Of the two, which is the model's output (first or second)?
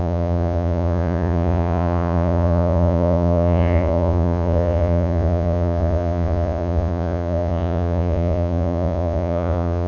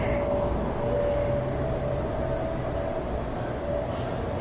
first